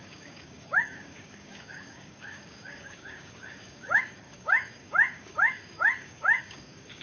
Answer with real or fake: fake